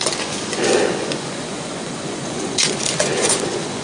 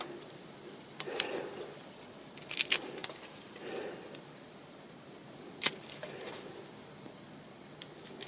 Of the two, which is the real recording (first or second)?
second